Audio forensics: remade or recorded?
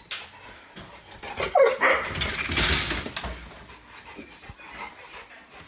recorded